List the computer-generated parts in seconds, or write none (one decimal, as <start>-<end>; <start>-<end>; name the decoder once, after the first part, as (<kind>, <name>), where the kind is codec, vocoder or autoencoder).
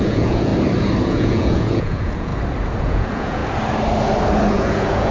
0.0-0.5 (vocoder, Vocos); 1.0-2.3; 2.8-3.4; 4.5-5.1